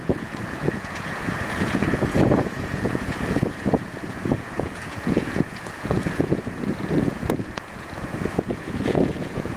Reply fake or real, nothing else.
fake